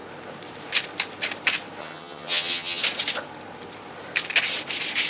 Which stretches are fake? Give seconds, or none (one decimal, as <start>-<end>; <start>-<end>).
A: 1.8-2.8